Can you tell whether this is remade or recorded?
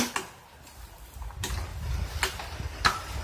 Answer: recorded